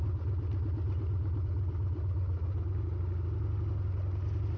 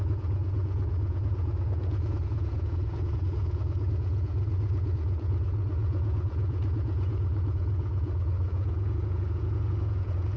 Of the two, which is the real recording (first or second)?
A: first